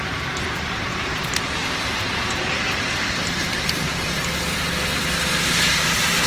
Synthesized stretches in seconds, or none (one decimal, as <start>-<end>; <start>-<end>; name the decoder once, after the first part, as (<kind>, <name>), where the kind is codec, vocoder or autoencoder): 0.0-3.9 (vocoder, BigVGAN v2); 5.4-6.3